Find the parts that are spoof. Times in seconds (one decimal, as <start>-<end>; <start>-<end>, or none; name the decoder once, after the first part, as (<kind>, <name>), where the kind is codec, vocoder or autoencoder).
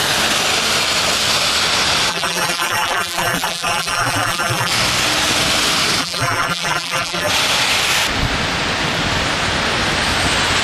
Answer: 2.1-4.7 (vocoder, BigVGAN v2); 6.0-7.3